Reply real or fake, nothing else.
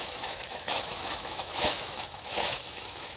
fake